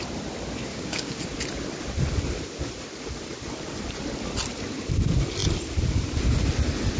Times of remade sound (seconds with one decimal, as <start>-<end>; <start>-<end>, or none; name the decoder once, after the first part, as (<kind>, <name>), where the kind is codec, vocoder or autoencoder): 0.7-1.2 (codec, DAC)